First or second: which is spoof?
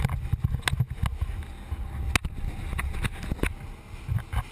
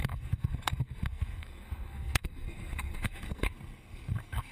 second